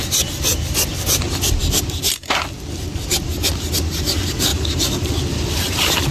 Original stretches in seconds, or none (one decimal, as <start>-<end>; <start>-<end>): 0.0-6.1